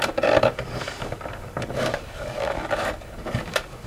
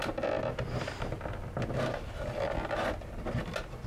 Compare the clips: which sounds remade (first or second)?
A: first